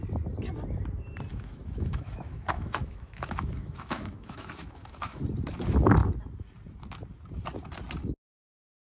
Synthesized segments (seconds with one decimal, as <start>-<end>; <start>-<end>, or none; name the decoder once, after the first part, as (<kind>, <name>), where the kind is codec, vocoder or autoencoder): 1.3-5.2 (autoencoder, DAC-VAE)